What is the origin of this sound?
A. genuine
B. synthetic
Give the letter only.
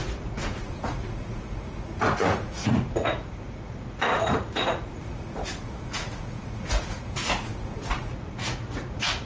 B